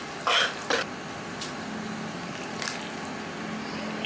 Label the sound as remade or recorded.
recorded